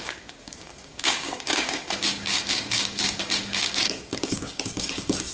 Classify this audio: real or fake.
fake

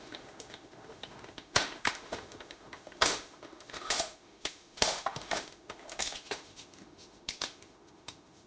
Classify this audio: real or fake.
fake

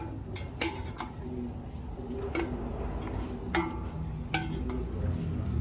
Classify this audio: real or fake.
real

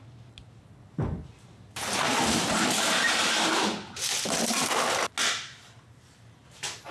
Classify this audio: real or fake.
real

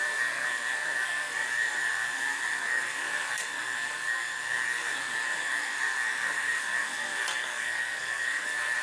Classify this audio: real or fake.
fake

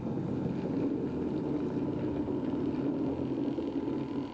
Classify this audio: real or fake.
real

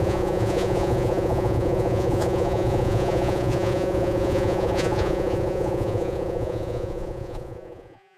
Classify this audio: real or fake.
fake